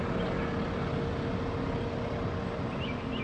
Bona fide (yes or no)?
yes